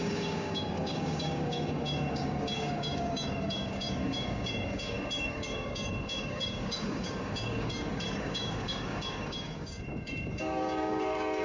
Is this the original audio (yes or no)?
no